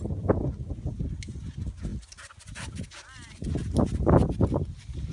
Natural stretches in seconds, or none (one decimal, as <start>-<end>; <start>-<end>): 0.0-5.1